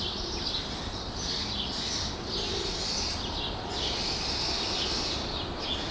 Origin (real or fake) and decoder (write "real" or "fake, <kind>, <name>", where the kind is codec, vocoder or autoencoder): real